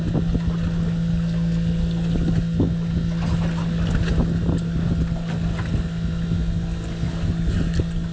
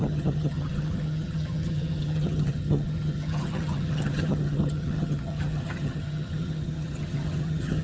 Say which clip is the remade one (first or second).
second